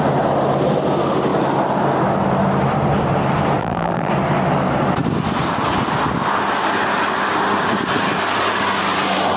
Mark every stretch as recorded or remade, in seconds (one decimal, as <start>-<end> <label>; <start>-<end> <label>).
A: 0.0-3.6 recorded; 3.6-4.1 remade; 4.1-9.4 recorded